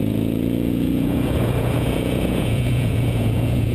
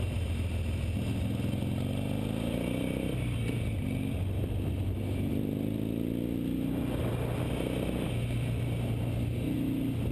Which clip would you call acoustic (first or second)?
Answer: second